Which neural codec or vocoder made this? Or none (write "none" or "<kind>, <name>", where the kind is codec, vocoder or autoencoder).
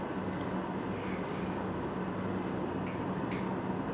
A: none